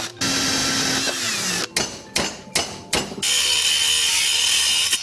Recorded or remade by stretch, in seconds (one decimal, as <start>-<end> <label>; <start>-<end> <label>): 0.0-5.0 recorded